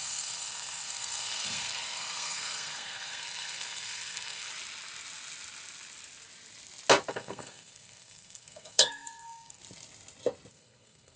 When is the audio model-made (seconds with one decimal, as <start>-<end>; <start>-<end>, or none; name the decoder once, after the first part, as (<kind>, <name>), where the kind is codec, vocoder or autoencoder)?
0.0-4.5 (codec, SNAC); 7.1-9.6; 10.5-11.2